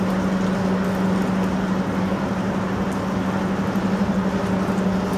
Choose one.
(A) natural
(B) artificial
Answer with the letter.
A